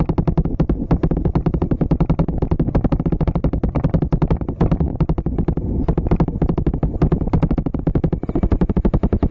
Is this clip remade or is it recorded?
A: recorded